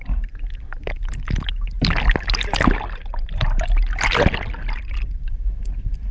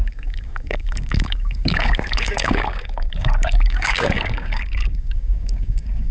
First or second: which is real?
first